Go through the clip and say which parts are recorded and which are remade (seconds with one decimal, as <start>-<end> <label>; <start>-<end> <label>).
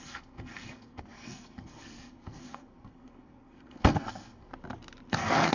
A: 0.0-4.5 remade; 4.5-5.1 recorded; 5.1-5.5 remade